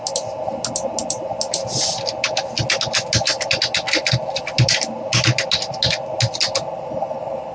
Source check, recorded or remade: recorded